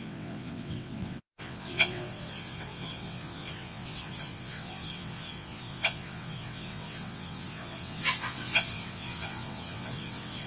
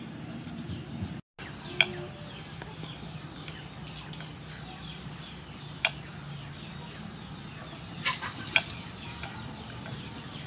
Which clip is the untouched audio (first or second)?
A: second